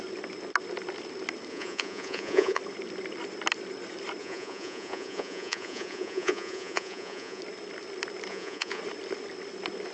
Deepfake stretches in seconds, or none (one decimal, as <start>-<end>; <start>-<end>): 1.5-2.6; 4.2-7.4; 8.3-8.8